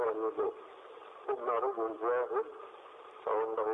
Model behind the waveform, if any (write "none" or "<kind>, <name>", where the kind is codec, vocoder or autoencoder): none